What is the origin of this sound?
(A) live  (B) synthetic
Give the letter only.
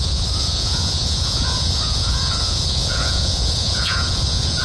B